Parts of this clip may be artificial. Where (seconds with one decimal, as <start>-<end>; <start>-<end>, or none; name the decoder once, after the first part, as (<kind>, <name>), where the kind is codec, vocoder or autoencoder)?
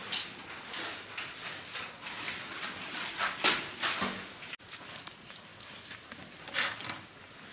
none